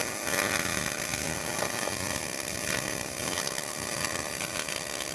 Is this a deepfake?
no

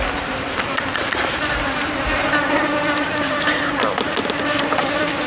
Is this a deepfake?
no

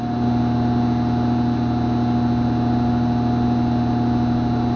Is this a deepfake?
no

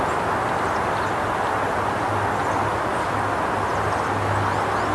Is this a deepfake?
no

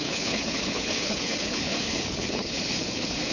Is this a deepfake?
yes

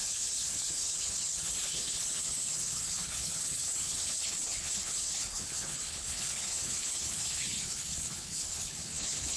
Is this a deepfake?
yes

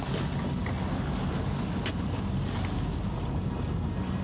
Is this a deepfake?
no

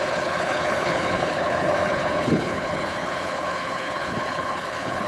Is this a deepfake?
yes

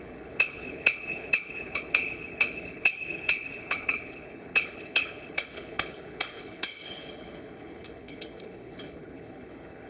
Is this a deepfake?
yes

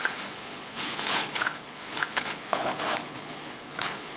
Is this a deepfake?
yes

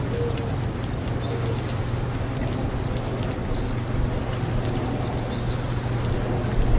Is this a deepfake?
no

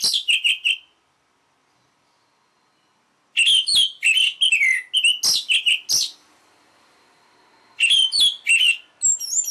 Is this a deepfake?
no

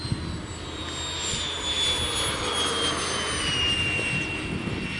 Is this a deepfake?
no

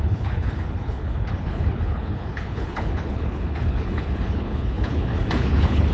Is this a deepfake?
yes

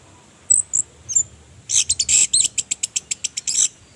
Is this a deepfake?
no